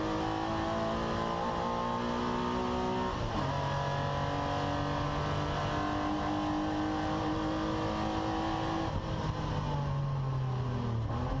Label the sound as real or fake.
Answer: real